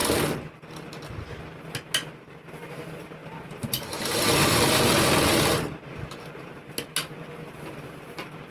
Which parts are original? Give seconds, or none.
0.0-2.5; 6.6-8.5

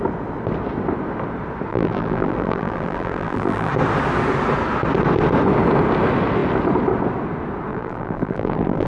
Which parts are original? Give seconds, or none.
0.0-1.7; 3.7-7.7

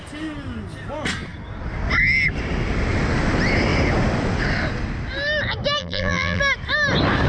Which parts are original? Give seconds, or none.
0.0-5.8; 6.4-7.3